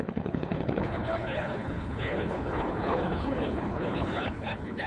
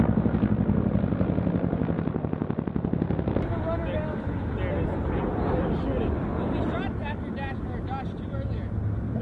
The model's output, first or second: first